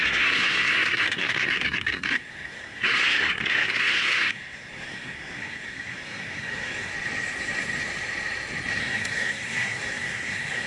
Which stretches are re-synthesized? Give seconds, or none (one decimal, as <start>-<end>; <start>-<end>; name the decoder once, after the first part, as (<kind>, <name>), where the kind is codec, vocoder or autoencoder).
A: 0.0-6.9 (codec, SNAC); 8.8-10.7

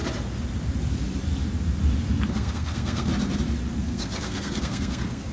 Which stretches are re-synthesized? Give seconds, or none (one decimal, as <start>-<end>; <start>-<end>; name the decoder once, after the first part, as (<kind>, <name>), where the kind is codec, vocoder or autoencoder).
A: 2.3-3.1 (codec, SNAC); 3.8-5.3

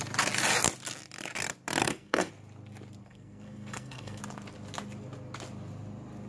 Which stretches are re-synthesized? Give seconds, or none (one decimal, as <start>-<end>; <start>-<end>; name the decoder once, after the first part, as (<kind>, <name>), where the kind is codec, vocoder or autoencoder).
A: 1.8-2.3 (codec, SNAC); 3.0-4.2

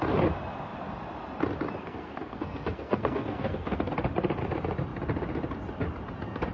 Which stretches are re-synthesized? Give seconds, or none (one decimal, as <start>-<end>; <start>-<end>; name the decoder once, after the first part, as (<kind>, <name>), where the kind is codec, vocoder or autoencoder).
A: 1.8-3.9 (codec, SNAC)

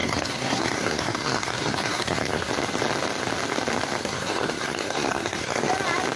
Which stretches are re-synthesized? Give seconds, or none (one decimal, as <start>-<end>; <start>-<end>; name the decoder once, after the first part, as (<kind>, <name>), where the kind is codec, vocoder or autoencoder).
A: 0.0-2.5 (codec, SNAC); 4.0-5.7

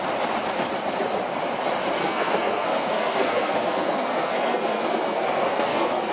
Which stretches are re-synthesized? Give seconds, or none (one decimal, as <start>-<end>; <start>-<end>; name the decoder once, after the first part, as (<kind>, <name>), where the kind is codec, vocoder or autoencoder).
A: 2.0-6.1 (codec, SNAC)

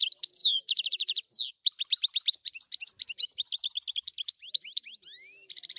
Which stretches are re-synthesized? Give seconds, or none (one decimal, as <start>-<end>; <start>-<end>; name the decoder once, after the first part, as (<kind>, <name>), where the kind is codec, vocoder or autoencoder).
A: none